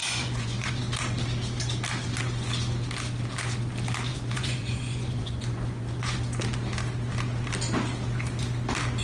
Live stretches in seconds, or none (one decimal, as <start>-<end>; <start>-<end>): 0.8-4.1; 6.2-9.0